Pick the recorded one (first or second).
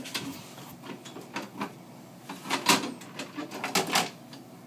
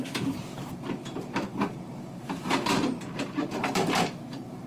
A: first